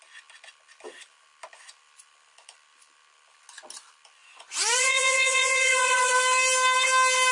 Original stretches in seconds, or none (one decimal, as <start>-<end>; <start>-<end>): 0.0-4.2; 6.1-7.3